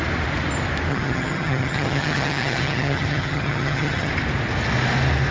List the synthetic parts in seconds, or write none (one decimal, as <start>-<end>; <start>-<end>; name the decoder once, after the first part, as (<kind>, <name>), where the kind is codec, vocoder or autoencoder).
0.9-4.1 (vocoder, HiFi-GAN)